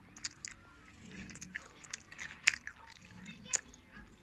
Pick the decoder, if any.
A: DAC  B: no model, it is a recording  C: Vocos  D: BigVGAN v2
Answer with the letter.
B